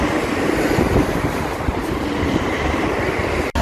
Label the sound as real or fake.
real